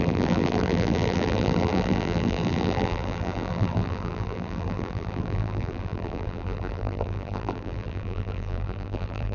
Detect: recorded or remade remade